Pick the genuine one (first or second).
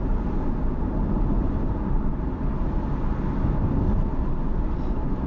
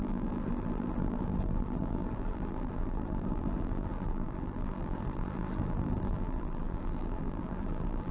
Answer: first